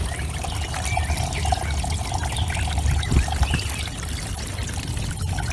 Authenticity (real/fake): real